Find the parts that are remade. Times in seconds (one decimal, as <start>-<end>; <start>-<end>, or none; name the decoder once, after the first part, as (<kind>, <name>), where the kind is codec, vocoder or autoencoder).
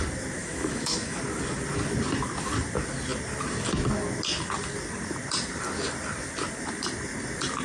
0.4-1.2 (autoencoder, DAC-VAE)